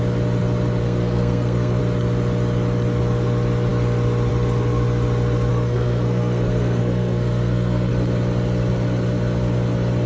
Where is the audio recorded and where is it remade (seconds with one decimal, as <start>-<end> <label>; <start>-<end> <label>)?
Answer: 0.0-0.8 recorded; 0.8-1.8 remade; 1.8-5.5 recorded; 5.5-7.9 remade; 7.9-10.1 recorded